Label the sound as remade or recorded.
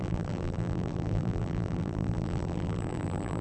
remade